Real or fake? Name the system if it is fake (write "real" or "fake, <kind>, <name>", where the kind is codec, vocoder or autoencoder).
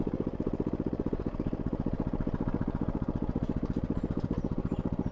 real